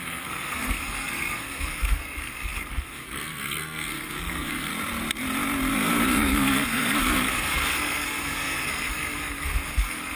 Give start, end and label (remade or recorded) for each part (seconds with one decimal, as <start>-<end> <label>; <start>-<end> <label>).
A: 0.0-4.7 remade; 4.7-5.7 recorded; 5.7-10.2 remade